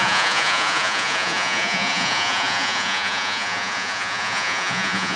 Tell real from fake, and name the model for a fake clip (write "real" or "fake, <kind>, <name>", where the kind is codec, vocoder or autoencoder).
fake, vocoder, Vocos